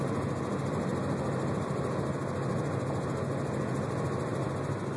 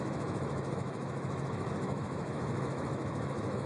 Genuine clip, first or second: first